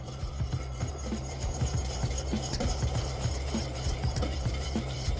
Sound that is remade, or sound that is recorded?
remade